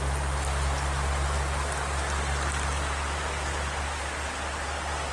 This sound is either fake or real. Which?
real